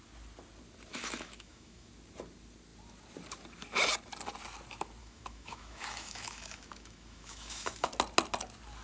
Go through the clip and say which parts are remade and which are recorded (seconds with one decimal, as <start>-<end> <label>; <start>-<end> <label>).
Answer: 0.0-0.9 recorded; 0.9-1.9 remade; 1.9-5.0 recorded; 5.0-7.9 remade; 7.9-8.8 recorded